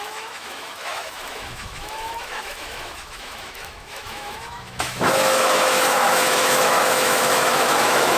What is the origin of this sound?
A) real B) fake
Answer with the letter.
B